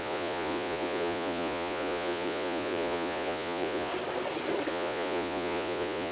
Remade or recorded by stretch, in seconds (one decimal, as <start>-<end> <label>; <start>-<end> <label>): 0.0-3.9 remade; 3.9-4.7 recorded; 4.7-6.1 remade